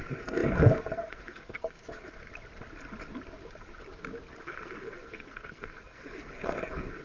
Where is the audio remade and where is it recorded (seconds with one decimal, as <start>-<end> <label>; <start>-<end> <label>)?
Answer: 0.0-2.3 remade; 2.3-4.4 recorded; 4.4-7.0 remade